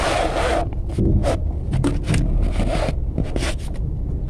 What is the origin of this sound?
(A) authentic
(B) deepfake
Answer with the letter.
A